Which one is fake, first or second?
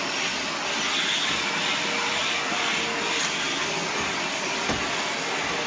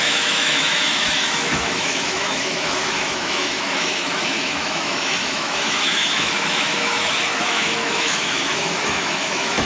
second